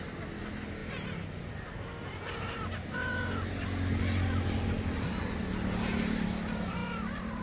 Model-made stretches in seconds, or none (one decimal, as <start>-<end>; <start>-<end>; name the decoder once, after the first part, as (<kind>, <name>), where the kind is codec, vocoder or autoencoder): none